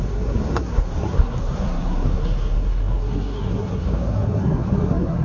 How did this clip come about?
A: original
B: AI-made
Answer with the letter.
B